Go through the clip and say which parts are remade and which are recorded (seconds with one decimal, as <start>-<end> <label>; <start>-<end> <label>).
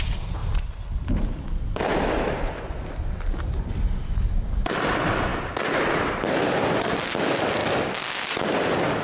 0.0-9.0 recorded